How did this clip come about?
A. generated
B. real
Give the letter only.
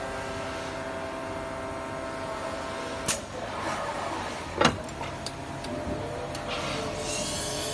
B